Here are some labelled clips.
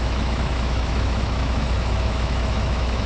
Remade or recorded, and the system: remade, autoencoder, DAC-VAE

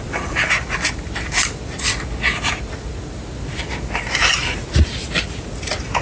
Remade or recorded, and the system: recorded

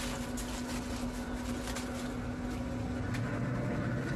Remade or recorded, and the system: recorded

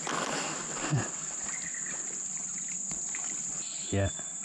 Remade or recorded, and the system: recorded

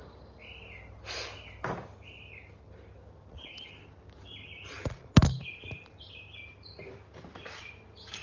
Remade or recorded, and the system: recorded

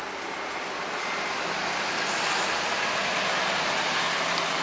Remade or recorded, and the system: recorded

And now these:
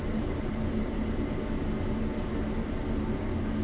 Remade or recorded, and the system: recorded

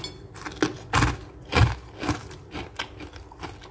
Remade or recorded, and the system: recorded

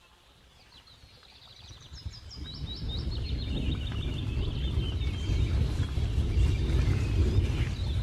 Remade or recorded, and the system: recorded